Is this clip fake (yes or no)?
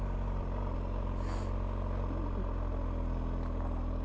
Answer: no